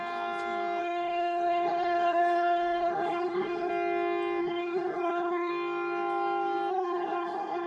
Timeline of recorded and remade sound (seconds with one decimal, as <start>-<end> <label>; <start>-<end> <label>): 0.0-0.8 recorded; 0.8-3.7 remade; 3.7-4.4 recorded; 4.4-5.5 remade; 5.5-6.7 recorded; 6.7-7.7 remade